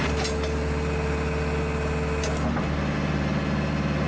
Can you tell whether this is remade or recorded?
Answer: recorded